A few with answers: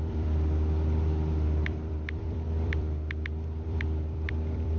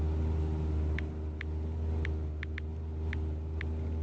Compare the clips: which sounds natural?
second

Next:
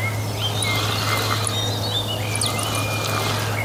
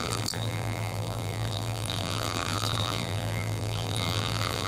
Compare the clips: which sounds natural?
first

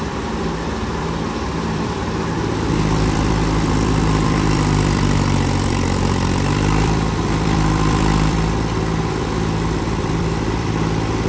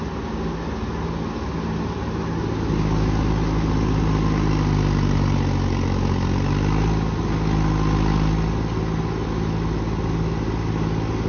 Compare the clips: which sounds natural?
second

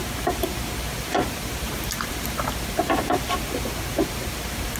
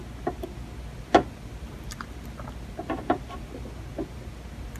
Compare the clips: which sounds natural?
second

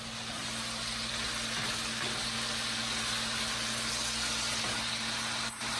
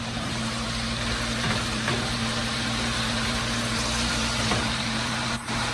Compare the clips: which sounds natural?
first